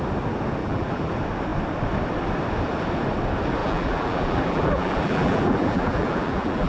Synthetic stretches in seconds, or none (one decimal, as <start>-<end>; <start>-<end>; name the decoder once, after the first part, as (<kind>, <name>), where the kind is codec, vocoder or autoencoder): 0.6-1.1 (vocoder, BigVGAN v2); 3.6-6.7